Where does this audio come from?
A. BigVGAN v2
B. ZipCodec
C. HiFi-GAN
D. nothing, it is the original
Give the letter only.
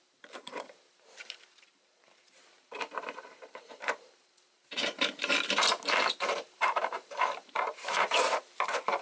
A